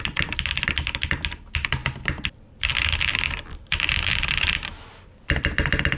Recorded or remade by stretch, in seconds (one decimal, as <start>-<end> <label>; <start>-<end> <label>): 0.0-6.0 recorded